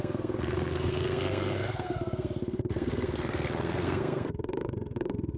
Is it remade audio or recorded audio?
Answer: remade